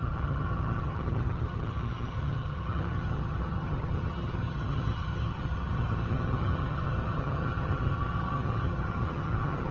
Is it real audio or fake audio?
fake